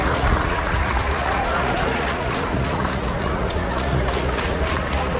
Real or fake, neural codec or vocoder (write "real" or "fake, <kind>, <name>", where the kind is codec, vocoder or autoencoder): fake, vocoder, Vocos